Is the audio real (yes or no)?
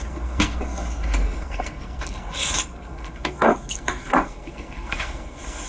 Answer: no